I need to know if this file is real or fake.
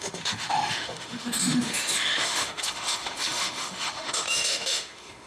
fake